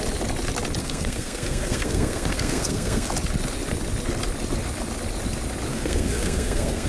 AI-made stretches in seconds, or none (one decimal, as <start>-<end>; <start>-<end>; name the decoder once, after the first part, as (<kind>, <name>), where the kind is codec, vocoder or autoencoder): 0.8-3.1 (codec, SNAC); 5.7-6.9